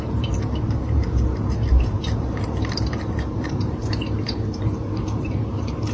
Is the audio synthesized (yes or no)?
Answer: yes